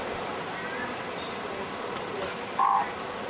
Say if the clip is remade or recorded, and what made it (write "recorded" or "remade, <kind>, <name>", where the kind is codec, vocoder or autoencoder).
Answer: recorded